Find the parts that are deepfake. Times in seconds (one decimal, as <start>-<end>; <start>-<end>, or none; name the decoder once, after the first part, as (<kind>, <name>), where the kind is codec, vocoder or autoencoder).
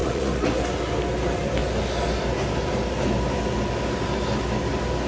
0.0-0.6 (vocoder, Vocos)